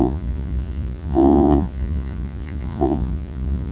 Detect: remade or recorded remade